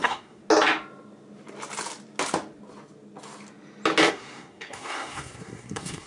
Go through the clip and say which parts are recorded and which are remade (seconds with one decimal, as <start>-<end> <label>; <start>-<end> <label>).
0.0-0.4 remade; 0.4-4.1 recorded; 4.1-6.1 remade

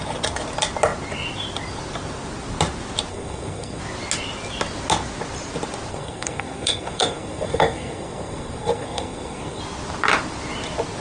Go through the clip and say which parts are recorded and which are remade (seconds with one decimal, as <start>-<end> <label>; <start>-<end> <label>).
0.0-3.1 recorded; 3.1-3.8 remade; 3.8-5.9 recorded; 5.9-9.6 remade; 9.6-11.0 recorded

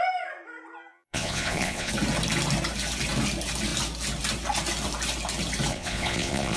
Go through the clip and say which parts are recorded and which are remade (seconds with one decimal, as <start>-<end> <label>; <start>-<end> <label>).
0.0-0.9 recorded; 0.9-1.9 remade; 1.9-5.7 recorded; 5.7-6.6 remade